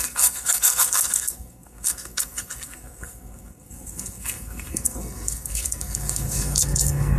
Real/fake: fake